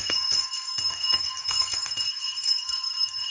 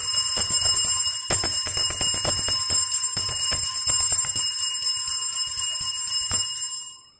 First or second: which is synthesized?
first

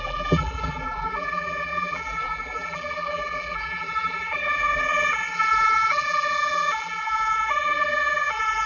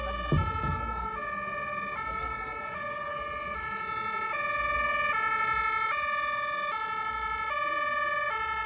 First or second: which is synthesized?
first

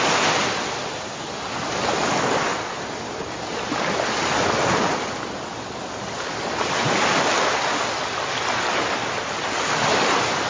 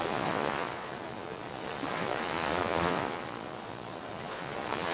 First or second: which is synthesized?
second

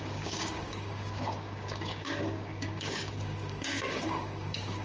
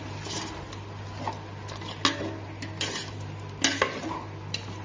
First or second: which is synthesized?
first